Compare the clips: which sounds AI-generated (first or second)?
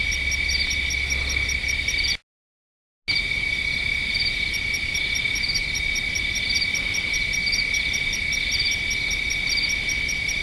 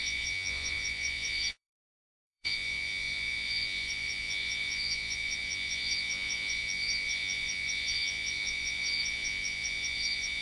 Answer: second